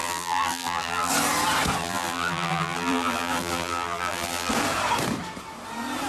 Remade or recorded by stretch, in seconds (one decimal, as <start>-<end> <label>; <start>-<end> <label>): 0.0-1.1 remade; 1.1-1.8 recorded; 1.8-4.5 remade; 4.5-6.1 recorded